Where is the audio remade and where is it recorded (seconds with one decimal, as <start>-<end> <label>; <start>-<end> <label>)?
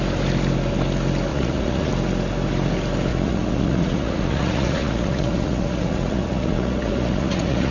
0.0-1.3 recorded; 1.3-1.9 remade; 1.9-3.1 recorded; 3.1-7.7 remade